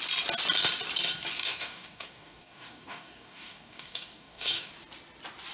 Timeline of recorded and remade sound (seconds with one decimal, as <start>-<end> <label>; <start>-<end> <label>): 0.0-1.4 recorded; 1.4-4.7 remade; 4.7-5.5 recorded